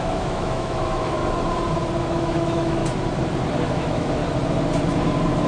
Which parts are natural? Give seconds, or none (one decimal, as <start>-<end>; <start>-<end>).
1.2-2.0; 2.8-3.7; 4.2-5.5